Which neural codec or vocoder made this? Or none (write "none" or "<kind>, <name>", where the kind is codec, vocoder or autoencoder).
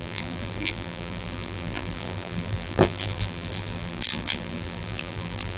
vocoder, BigVGAN v2